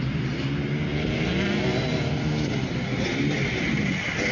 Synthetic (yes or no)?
no